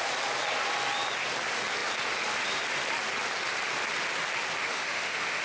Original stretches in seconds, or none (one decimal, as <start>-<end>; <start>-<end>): 0.0-4.6